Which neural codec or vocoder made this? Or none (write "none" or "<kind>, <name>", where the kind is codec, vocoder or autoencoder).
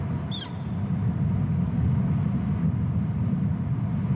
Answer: none